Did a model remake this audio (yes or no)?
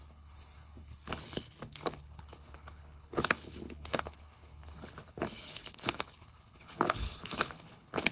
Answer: yes